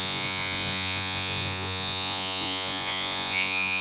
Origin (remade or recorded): remade